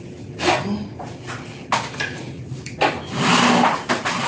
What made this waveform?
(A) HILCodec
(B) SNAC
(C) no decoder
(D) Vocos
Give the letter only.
C